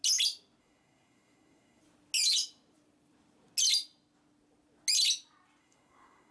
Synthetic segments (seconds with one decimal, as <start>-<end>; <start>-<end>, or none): 0.6-1.8; 5.6-6.3